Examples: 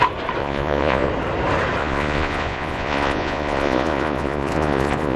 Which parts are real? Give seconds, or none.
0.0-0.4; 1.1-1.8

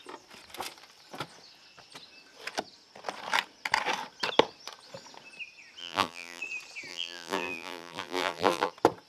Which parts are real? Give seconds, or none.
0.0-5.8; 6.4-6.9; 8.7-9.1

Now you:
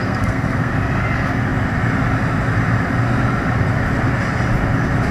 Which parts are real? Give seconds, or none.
0.7-5.1

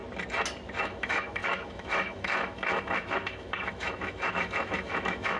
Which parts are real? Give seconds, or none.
0.0-0.8

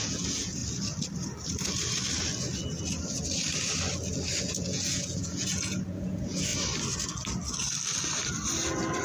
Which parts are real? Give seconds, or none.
0.6-4.4; 6.5-9.0

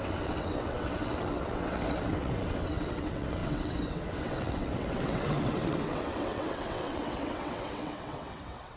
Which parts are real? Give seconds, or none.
none

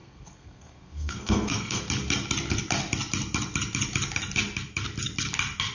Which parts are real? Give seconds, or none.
1.8-5.7

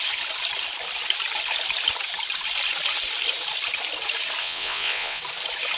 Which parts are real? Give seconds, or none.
0.0-4.4; 5.2-5.8